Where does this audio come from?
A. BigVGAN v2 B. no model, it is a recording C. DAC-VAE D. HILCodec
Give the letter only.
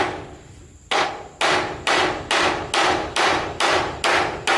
B